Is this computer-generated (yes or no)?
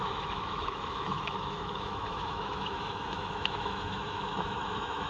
yes